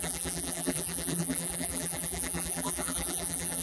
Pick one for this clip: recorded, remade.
remade